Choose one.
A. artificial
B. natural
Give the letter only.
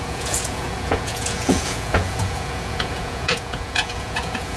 A